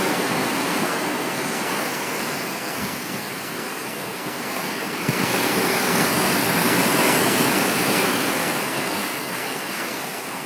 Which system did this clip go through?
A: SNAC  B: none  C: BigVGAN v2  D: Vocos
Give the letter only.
A